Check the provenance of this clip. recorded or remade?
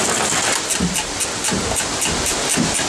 recorded